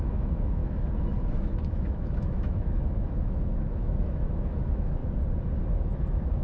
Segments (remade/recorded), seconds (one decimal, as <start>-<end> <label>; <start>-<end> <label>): 0.0-0.6 remade; 0.6-1.3 recorded; 1.3-5.0 remade; 5.0-5.7 recorded; 5.7-6.4 remade